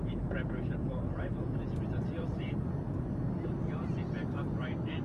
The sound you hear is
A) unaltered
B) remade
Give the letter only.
A